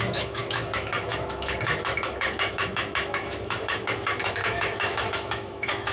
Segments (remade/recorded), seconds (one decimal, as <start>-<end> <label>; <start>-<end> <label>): 0.0-5.9 remade